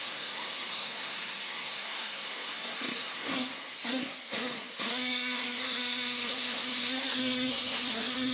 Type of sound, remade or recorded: remade